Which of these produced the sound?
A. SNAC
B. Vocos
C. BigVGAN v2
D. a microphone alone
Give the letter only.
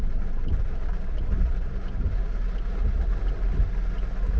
D